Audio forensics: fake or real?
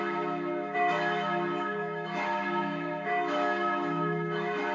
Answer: fake